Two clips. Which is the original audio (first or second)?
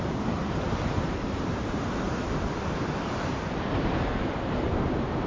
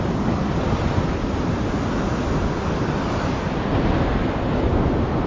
second